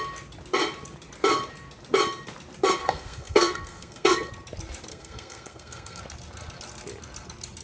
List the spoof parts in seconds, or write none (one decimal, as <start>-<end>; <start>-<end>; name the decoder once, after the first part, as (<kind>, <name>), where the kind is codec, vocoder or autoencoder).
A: 2.8-4.3 (codec, SNAC); 4.9-6.0

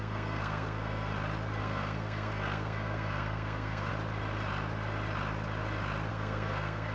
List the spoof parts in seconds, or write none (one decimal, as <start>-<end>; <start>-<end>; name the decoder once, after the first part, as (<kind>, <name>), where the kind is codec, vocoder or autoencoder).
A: 0.0-1.1 (codec, SNAC); 1.6-3.9; 6.1-6.9

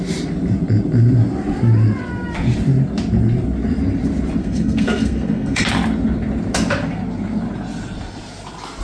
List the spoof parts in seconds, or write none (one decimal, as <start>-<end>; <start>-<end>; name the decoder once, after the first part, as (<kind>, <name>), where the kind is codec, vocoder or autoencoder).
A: 4.4-5.6 (codec, SNAC)

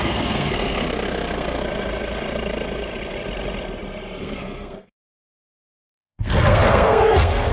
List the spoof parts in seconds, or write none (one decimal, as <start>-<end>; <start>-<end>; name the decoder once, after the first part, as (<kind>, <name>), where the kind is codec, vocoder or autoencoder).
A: 0.0-1.6 (codec, SNAC); 4.2-7.5

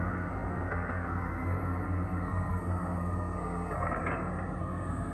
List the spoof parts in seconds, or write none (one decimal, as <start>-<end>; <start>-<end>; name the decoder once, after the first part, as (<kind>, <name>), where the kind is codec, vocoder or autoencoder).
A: 0.0-4.0 (codec, SNAC); 4.6-5.1

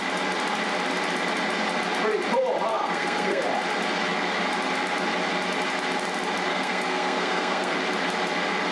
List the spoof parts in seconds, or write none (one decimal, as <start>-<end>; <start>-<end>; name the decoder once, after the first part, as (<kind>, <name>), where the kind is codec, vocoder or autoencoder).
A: 2.7-3.4 (codec, SNAC); 6.5-7.8

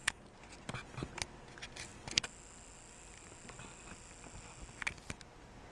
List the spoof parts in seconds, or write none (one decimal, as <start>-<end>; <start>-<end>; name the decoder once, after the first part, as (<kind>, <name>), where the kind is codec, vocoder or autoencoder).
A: none

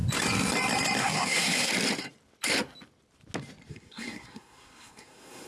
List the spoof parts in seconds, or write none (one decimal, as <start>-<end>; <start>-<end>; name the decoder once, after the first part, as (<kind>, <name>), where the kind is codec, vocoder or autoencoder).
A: 1.0-1.7 (codec, SNAC); 3.7-5.5